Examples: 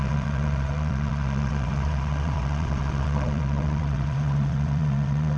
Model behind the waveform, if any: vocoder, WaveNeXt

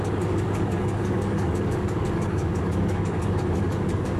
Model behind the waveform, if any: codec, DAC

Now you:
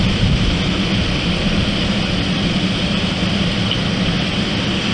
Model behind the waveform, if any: none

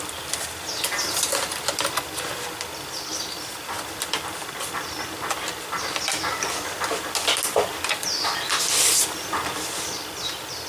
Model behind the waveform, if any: none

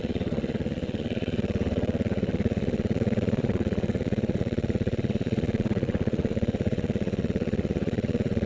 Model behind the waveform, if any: vocoder, Vocos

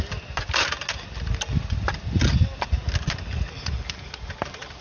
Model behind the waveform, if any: none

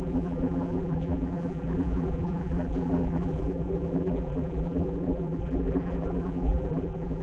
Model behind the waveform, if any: vocoder, BigVGAN v2